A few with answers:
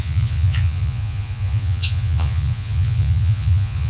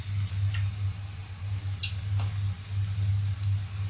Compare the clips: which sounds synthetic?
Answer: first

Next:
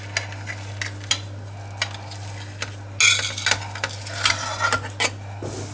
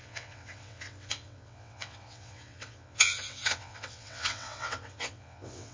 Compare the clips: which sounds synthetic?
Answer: second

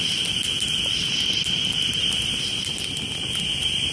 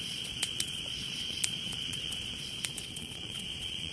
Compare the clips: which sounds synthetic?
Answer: second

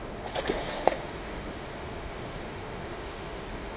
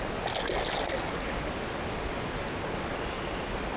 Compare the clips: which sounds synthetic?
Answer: first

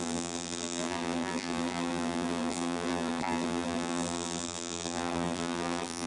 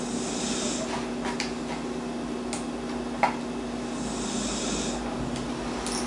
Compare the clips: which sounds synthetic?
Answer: first